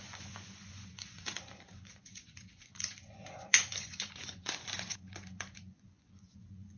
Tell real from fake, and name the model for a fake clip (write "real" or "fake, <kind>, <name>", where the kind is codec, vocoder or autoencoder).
fake, vocoder, Vocos